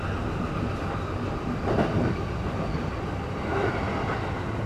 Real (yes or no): yes